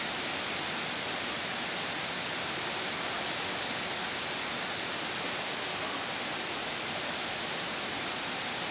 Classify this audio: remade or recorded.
recorded